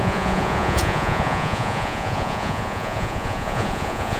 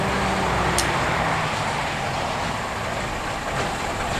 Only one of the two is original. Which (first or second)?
second